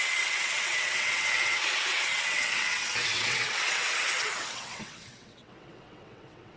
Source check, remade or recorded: remade